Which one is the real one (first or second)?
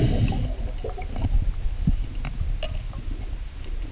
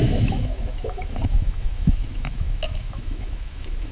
first